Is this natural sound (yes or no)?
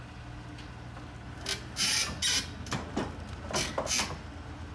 yes